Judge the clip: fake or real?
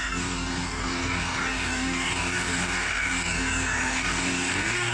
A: fake